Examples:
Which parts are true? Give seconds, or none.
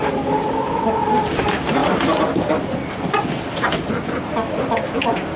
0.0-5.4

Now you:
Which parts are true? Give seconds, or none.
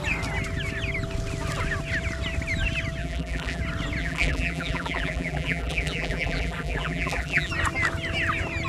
0.0-3.0; 3.6-4.0; 7.5-8.7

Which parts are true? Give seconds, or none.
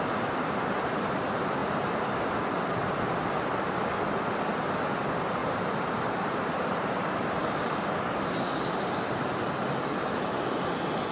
0.0-5.4; 7.7-11.1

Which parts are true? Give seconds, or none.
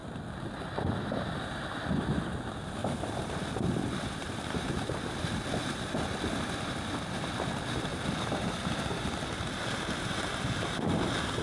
1.3-2.8; 4.7-7.9; 8.5-11.4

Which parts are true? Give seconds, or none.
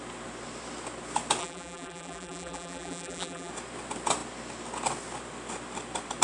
0.0-1.4; 3.5-6.2